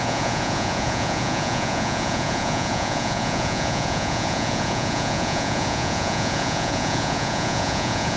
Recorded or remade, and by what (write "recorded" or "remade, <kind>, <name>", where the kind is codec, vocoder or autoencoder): remade, vocoder, Vocos